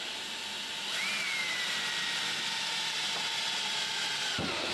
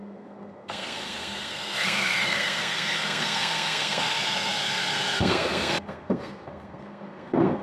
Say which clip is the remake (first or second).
second